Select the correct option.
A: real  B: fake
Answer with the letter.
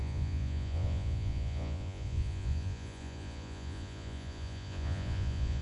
B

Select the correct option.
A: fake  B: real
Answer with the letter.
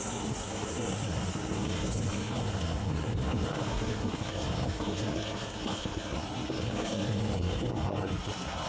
A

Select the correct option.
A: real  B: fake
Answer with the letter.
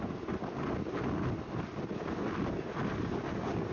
A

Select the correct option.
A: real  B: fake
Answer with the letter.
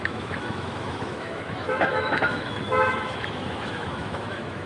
B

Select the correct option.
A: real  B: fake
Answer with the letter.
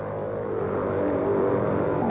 A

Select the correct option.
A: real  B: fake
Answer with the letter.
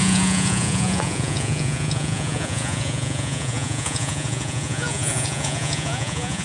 B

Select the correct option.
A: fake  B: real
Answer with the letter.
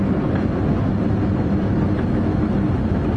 B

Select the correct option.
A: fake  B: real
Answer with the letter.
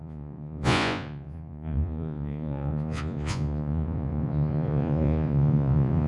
A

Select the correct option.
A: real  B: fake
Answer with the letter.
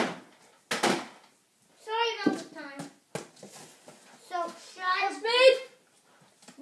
A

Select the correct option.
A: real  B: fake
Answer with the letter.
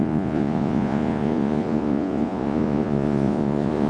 B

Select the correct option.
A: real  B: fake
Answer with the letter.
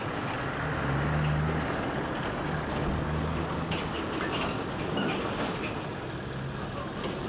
A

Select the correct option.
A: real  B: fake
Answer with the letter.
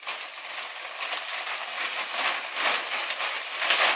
A